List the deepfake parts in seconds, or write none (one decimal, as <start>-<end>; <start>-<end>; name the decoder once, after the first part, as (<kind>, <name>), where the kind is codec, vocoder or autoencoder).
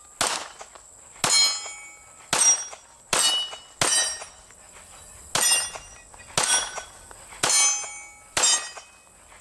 none